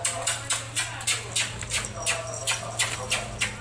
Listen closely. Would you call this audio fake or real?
real